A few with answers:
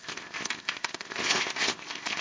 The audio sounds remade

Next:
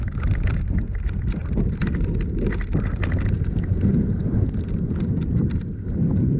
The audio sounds recorded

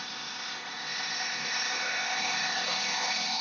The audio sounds remade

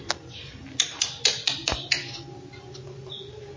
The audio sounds recorded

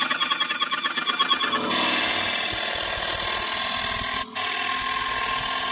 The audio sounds recorded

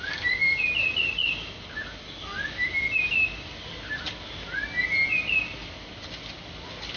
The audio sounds recorded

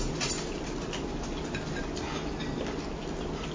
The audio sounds recorded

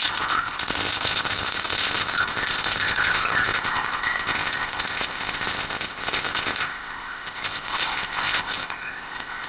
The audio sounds remade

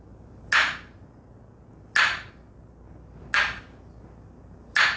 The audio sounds recorded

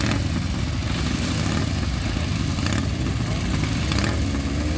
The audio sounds recorded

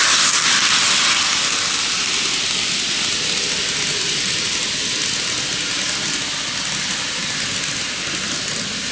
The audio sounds recorded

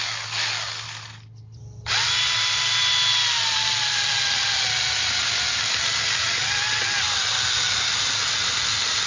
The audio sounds recorded